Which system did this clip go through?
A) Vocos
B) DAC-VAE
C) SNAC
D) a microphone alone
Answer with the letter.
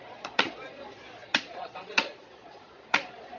A